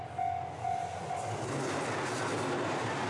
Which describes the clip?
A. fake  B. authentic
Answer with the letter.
B